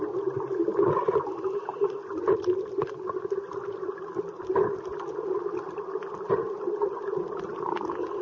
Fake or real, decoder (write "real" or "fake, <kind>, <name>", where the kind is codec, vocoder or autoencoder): real